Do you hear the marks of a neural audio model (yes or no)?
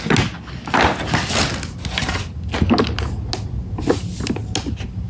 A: no